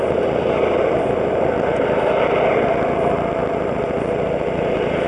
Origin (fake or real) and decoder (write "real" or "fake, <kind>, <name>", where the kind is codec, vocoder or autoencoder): real